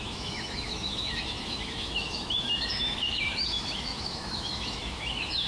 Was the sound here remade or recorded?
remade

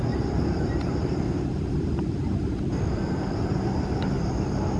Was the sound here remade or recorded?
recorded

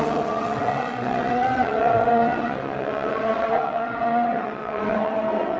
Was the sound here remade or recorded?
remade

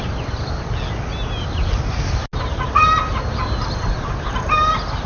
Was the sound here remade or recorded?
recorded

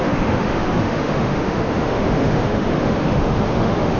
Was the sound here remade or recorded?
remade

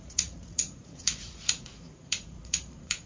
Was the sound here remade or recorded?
remade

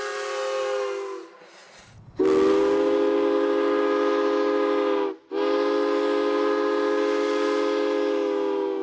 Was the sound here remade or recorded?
recorded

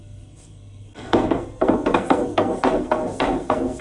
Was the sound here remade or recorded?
remade